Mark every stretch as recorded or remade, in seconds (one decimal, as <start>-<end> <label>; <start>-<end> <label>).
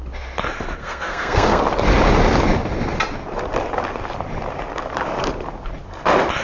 0.0-0.8 recorded; 0.8-1.6 remade; 1.6-6.4 recorded